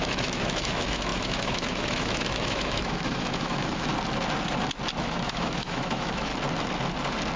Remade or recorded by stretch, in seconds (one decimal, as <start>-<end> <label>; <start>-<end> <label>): 0.0-3.9 remade; 3.9-5.0 recorded; 5.0-6.3 remade; 6.3-7.4 recorded